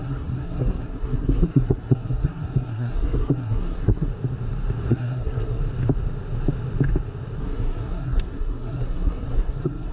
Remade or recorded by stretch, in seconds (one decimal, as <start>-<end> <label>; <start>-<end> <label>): 0.0-4.1 remade; 4.1-4.9 recorded; 4.9-5.6 remade; 5.6-7.4 recorded; 7.4-9.9 remade